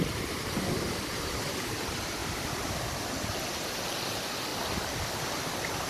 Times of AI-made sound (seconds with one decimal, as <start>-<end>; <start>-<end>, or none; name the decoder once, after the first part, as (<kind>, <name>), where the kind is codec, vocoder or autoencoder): 2.2-2.8 (vocoder, BigVGAN v2); 4.5-5.1